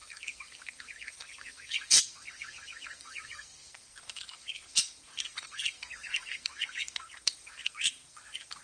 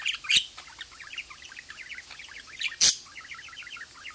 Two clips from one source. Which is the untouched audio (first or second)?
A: second